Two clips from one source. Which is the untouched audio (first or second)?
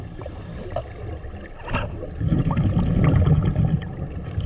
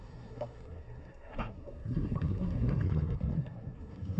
first